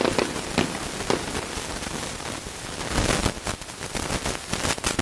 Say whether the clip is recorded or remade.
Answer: recorded